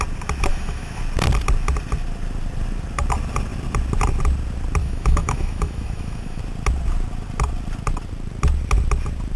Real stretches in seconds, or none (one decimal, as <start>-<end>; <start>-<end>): 0.0-0.5; 1.0-4.8; 6.4-9.4